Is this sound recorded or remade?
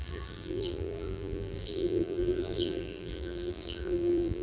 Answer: remade